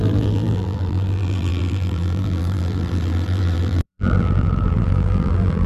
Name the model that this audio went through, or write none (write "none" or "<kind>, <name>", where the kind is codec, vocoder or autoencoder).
vocoder, BigVGAN v2